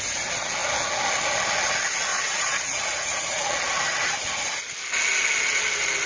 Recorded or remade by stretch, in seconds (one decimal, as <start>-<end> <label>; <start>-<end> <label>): 0.0-2.1 recorded; 2.1-3.4 remade; 3.4-6.1 recorded